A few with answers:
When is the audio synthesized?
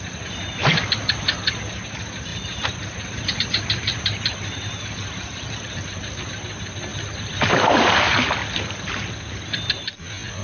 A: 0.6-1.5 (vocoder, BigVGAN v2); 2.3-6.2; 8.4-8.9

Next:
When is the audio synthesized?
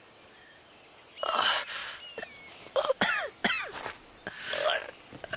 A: none